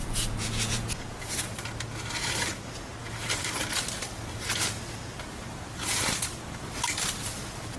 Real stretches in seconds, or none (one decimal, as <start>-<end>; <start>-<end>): 1.5-7.8